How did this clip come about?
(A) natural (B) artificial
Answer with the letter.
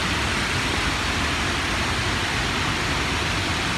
A